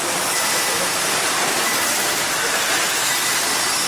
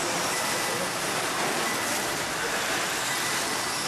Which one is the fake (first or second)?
first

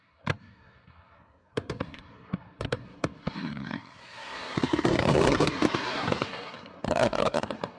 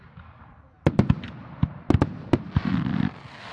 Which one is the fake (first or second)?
first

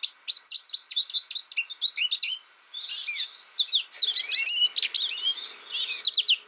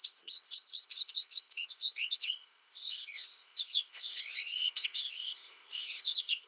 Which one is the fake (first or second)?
second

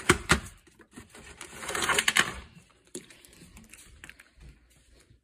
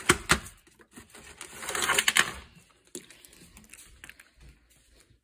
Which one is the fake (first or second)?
first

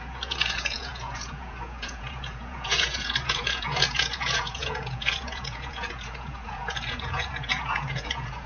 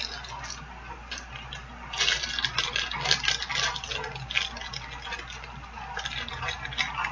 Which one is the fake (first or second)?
first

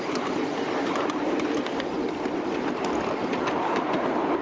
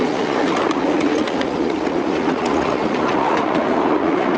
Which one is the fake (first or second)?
second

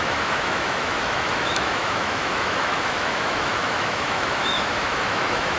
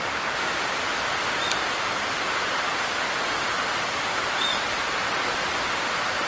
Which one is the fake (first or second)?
first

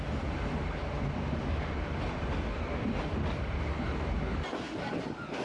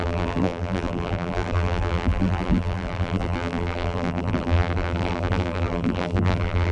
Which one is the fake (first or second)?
second